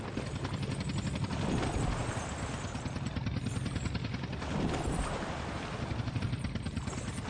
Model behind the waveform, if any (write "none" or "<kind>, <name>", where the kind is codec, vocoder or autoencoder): none